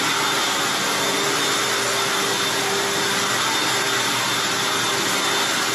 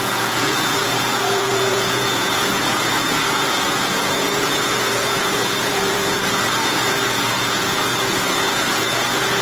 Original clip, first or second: first